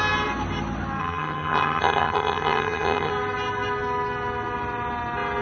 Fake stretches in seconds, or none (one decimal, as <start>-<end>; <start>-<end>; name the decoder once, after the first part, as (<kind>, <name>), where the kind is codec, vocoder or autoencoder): 1.0-3.1 (vocoder, HiFi-GAN)